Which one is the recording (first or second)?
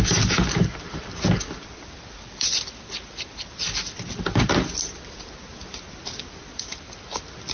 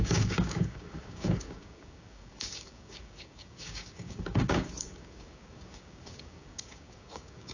first